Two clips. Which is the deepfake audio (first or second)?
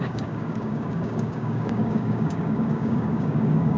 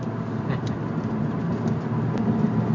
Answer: first